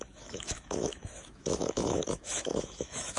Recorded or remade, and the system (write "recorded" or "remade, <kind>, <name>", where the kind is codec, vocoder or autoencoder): remade, autoencoder, DAC-VAE